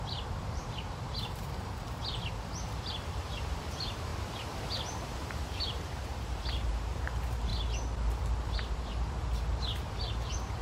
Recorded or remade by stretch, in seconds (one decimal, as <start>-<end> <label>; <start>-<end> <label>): 0.0-2.0 remade; 2.0-2.9 recorded; 2.9-7.5 remade; 7.5-8.8 recorded; 8.8-10.6 remade